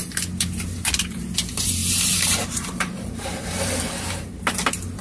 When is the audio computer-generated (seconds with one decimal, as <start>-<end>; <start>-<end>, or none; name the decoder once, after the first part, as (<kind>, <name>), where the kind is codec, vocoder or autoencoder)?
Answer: 0.0-5.0 (vocoder, BigVGAN v2)